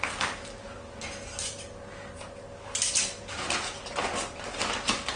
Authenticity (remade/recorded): recorded